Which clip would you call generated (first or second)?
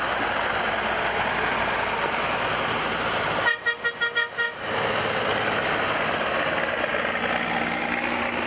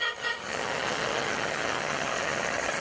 second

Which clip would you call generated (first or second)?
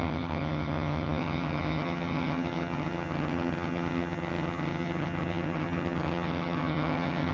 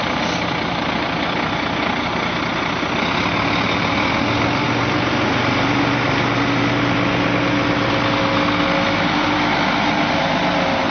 first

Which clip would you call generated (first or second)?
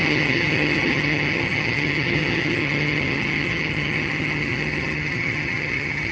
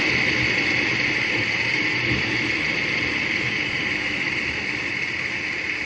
first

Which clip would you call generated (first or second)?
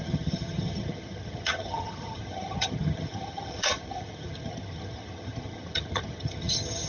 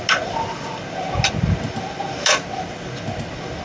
first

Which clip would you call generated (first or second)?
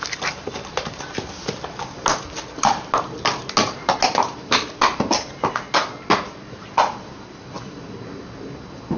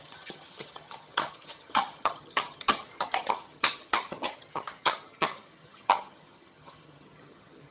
second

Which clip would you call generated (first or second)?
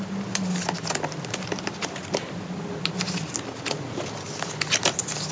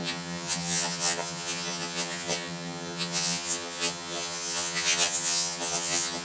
second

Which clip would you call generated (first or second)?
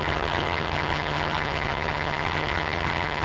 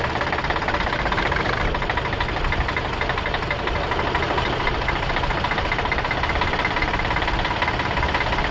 first